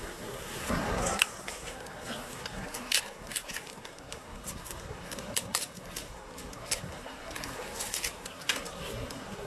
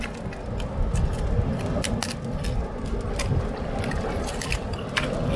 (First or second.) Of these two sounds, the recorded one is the second